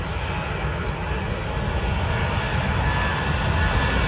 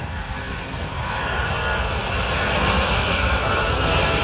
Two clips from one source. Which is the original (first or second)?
first